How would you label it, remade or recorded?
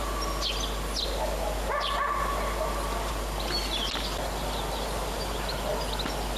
recorded